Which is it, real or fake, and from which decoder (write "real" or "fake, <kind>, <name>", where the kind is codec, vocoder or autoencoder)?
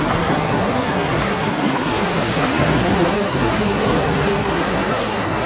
fake, codec, SNAC